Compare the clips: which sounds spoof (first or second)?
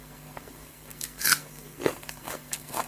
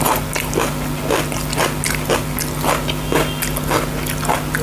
first